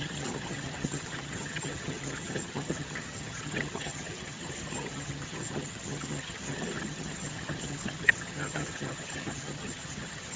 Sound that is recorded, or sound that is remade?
remade